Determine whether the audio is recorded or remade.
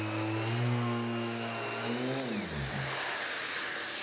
recorded